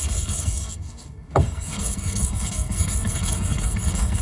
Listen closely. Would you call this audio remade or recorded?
remade